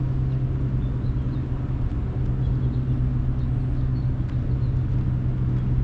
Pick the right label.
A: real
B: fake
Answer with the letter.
A